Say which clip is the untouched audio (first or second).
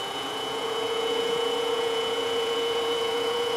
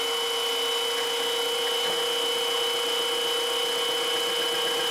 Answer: second